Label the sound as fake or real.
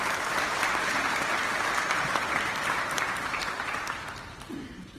fake